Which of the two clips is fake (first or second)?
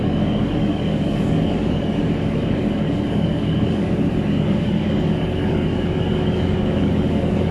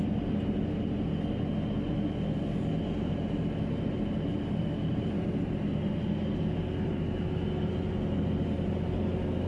first